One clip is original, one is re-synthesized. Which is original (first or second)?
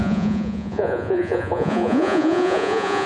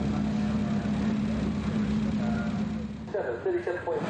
second